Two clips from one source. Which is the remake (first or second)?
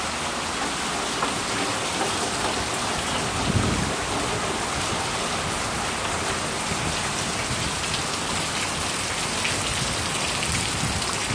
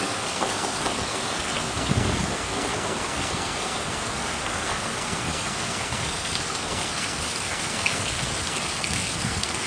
second